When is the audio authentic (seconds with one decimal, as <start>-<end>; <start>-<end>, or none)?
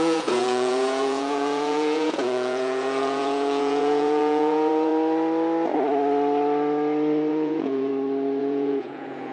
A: 4.9-7.3; 7.9-8.4